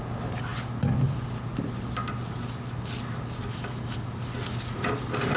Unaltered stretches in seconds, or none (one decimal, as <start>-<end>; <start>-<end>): 0.0-5.4